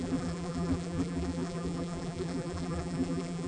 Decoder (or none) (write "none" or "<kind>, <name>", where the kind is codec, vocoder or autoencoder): vocoder, BigVGAN v2